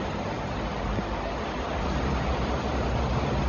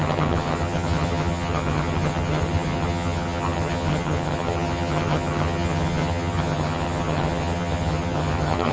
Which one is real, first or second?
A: first